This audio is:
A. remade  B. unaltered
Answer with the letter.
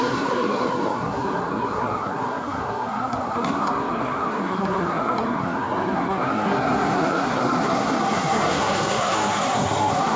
A